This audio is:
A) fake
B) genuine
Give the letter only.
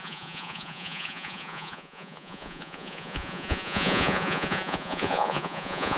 A